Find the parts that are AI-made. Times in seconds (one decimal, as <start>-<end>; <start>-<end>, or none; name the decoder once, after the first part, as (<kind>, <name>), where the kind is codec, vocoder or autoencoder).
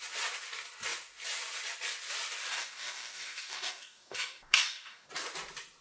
2.5-5.1 (codec, DAC)